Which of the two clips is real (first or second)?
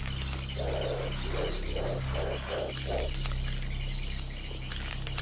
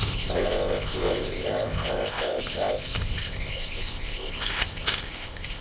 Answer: first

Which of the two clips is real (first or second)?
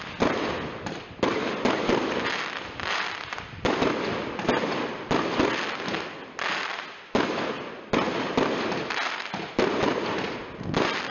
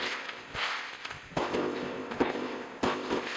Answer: first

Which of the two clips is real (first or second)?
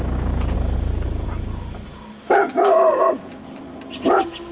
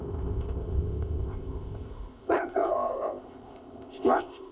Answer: first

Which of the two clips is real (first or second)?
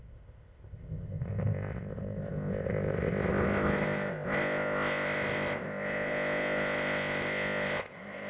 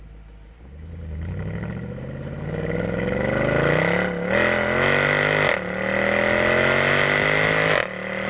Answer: second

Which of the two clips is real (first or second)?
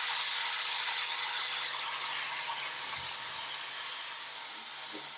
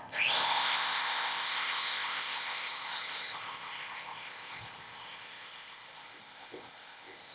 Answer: first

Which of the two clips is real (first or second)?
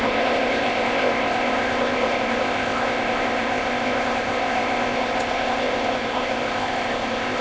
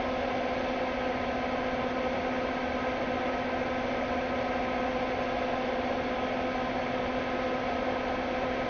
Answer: second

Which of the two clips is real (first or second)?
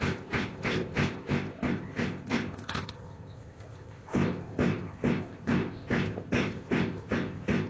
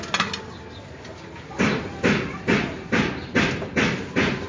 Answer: second